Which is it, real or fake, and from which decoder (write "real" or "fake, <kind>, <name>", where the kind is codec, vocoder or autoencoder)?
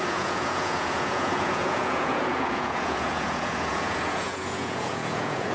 fake, vocoder, Vocos